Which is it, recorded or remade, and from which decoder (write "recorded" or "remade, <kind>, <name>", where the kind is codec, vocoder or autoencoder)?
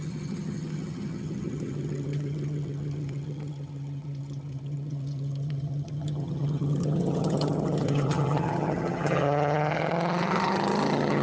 remade, vocoder, HiFi-GAN